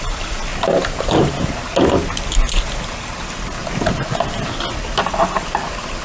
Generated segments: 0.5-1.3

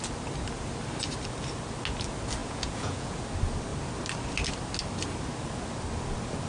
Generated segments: 2.4-3.2

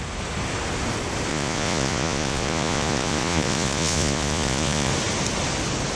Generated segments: 1.3-4.9

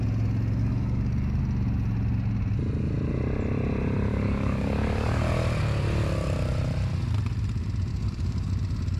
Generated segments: 0.6-1.4; 4.1-5.2; 7.9-8.5